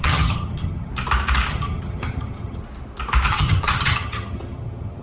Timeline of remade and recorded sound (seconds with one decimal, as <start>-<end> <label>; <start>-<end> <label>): 0.0-0.9 remade; 0.9-1.5 recorded; 1.5-2.6 remade; 2.6-3.3 recorded; 3.3-5.0 remade